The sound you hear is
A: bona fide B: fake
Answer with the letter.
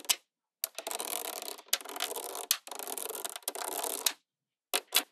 A